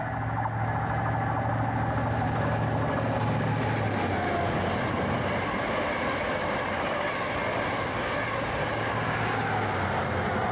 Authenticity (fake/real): real